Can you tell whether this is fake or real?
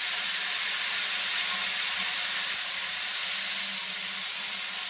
real